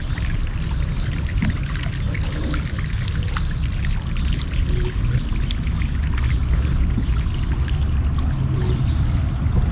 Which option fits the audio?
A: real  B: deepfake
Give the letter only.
A